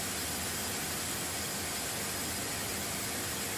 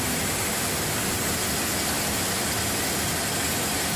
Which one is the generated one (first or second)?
second